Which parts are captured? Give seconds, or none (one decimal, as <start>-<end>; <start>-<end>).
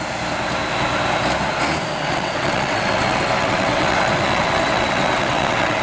0.0-2.0